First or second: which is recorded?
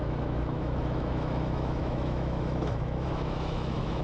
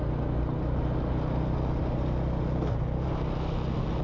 second